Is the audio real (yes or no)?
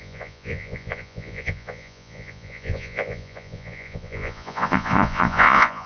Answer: no